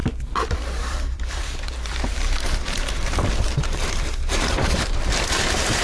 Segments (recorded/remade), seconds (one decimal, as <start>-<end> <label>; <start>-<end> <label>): 0.0-0.5 recorded; 0.5-5.8 remade